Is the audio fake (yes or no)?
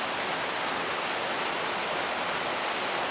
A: no